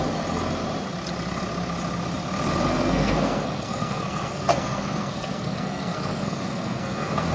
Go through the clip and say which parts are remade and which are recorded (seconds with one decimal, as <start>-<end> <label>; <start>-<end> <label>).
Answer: 0.0-2.7 recorded; 2.7-7.3 remade